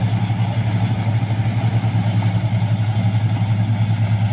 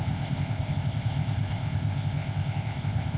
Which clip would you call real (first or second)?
first